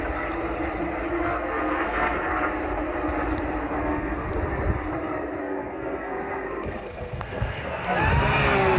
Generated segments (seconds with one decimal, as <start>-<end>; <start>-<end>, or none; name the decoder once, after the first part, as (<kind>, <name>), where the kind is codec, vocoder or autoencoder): 1.4-2.3 (codec, SNAC); 3.6-4.3; 5.4-8.0